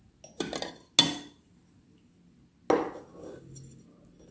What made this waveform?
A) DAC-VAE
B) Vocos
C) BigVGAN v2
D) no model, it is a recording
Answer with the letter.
D